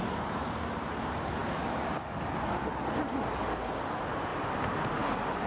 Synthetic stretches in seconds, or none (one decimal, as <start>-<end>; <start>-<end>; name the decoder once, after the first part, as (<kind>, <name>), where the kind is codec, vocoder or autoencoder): none